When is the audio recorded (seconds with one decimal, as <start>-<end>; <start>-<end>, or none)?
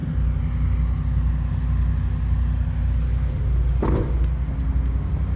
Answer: 0.0-5.4